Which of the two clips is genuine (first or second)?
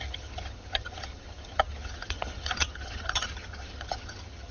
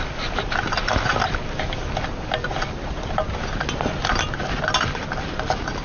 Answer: second